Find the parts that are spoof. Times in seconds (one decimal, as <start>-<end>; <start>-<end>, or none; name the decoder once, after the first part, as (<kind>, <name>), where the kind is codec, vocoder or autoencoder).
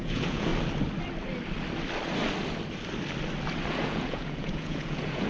0.0-0.5 (vocoder, Vocos); 3.7-5.3